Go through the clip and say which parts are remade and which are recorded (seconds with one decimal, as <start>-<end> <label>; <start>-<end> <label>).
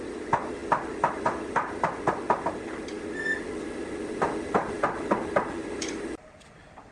0.0-6.9 recorded